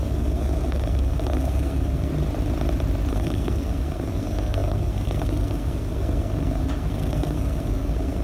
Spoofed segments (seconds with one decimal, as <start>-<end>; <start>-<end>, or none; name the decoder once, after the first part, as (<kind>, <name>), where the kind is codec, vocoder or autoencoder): 0.0-2.1 (codec, SNAC); 3.1-8.2